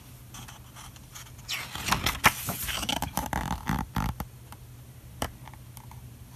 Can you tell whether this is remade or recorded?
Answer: recorded